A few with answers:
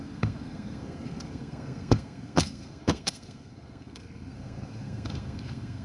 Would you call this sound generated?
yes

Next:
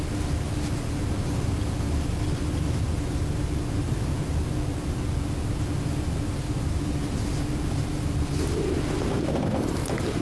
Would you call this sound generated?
no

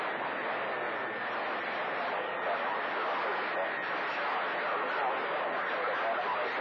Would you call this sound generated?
no